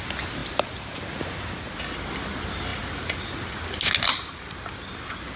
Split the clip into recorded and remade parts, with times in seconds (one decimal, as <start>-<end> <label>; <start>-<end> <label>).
0.0-0.4 recorded; 0.4-1.4 remade; 1.4-5.4 recorded